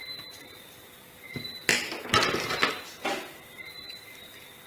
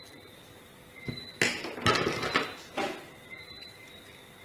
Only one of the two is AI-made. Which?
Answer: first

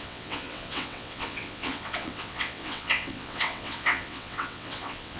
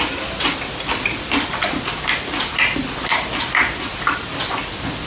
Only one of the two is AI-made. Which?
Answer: first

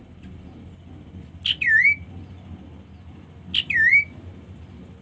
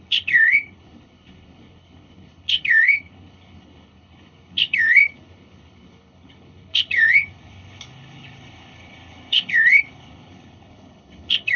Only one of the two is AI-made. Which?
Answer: second